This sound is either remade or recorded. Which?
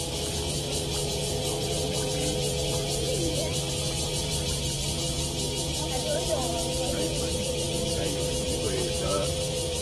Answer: remade